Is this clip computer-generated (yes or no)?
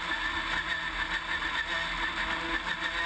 no